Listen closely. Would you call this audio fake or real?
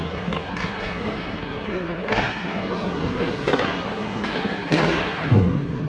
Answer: fake